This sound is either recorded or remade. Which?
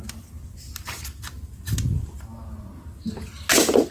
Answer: recorded